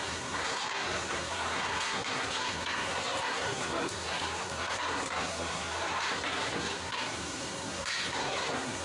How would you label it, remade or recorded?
remade